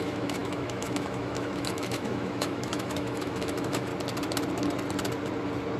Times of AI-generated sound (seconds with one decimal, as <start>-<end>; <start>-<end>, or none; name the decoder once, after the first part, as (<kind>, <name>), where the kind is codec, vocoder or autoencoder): 0.0-3.9 (autoencoder, DAC-VAE)